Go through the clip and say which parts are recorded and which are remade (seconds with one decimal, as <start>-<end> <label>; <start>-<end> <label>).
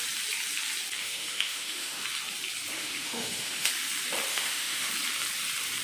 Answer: 0.0-1.0 recorded; 1.0-2.0 remade; 2.0-2.7 recorded; 2.7-3.7 remade; 3.7-4.3 recorded; 4.3-4.9 remade; 4.9-5.8 recorded